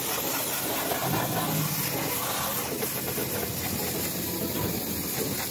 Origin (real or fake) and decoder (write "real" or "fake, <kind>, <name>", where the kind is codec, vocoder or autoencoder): fake, vocoder, BigVGAN v2